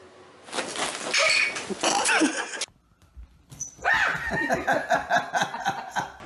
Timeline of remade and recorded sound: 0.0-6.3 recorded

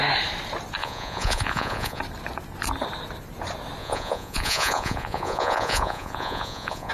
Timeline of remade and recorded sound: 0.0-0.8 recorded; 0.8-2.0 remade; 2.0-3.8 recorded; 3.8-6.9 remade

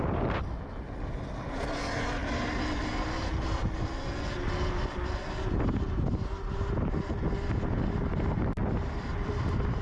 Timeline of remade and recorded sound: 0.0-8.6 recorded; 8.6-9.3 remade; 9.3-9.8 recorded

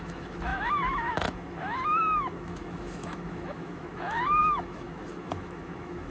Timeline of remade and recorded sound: 0.0-6.1 remade

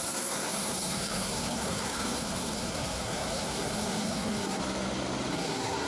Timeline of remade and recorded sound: 0.0-4.6 remade; 4.6-5.3 recorded; 5.3-5.9 remade

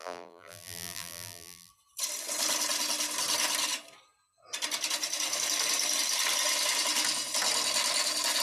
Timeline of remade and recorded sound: 0.0-1.7 remade; 1.7-8.4 recorded